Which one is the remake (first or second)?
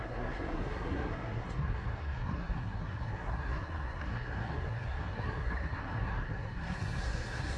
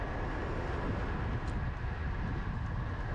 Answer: first